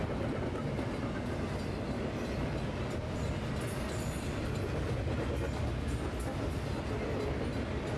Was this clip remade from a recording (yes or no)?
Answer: no